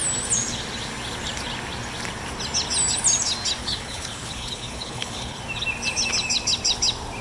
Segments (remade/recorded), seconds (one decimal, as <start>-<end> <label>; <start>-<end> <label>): 0.0-3.6 recorded; 3.6-5.4 remade; 5.4-7.2 recorded

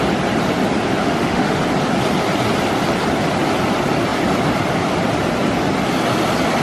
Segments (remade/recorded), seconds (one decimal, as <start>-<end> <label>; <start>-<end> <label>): 0.0-1.0 recorded; 1.0-1.6 remade; 1.6-6.6 recorded

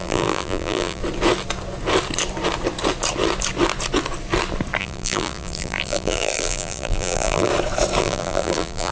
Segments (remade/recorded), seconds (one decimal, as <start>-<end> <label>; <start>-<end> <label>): 0.0-1.0 remade; 1.0-4.8 recorded; 4.8-7.5 remade; 7.5-8.0 recorded; 8.0-8.9 remade

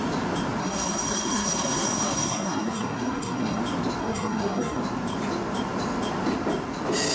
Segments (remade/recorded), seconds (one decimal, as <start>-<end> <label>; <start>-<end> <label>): 0.0-0.6 recorded; 0.6-3.6 remade; 3.6-4.0 recorded; 4.0-4.8 remade; 4.8-7.1 recorded

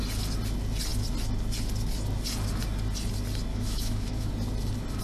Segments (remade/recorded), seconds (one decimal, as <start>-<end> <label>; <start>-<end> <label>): 0.0-3.5 recorded; 3.5-4.3 remade; 4.3-5.0 recorded

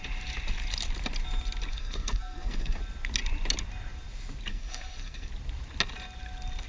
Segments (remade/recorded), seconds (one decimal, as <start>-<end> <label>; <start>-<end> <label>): 0.0-1.7 recorded; 1.7-2.8 remade; 2.8-4.5 recorded; 4.5-5.3 remade; 5.3-6.7 recorded

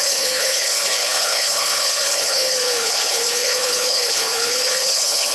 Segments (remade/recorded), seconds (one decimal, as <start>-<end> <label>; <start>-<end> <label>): 0.0-5.3 remade

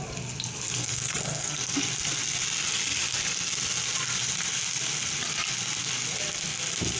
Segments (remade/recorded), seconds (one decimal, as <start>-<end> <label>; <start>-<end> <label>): 0.0-0.8 recorded; 0.8-1.7 remade; 1.7-7.0 recorded